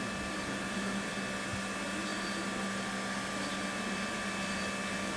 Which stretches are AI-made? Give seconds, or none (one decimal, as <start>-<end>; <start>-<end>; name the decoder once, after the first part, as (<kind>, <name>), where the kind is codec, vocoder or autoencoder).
none